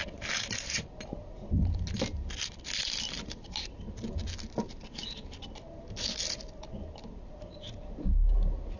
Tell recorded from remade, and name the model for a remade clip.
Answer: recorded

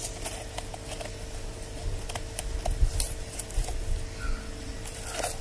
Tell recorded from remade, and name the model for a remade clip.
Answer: recorded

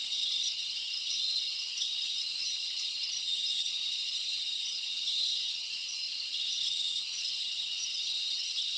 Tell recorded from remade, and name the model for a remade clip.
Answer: remade, vocoder, HiFi-GAN